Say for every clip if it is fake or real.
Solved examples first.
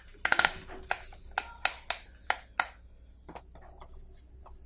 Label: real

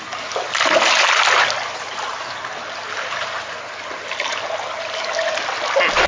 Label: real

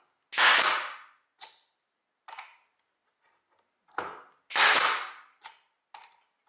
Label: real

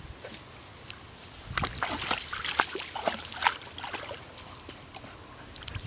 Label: real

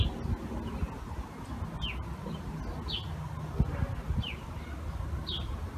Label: real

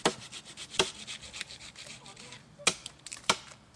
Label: real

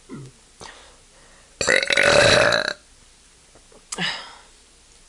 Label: real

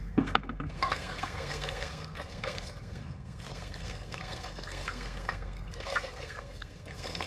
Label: fake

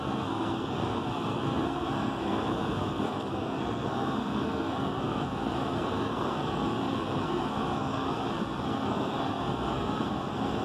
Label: fake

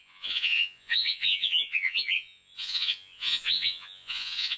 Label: fake